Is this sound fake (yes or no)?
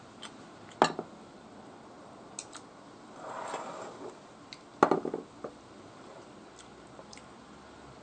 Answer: no